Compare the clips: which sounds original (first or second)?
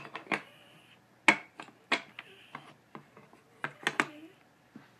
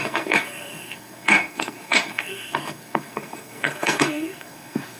first